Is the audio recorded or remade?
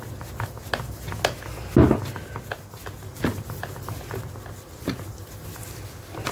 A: recorded